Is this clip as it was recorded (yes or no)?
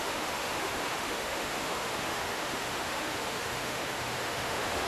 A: no